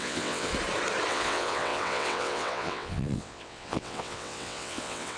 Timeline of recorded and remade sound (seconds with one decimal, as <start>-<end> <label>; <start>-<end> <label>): 0.0-0.5 remade; 0.5-1.1 recorded; 1.1-5.2 remade